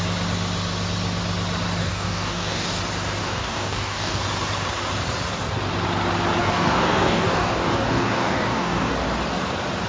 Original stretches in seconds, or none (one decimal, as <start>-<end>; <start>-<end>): 0.0-1.8; 2.8-3.2; 4.2-6.4; 8.9-9.9